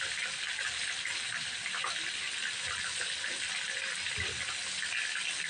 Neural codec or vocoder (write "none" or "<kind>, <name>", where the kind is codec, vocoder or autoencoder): none